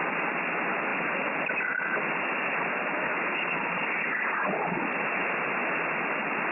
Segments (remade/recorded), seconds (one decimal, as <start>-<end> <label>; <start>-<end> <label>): 0.0-6.5 recorded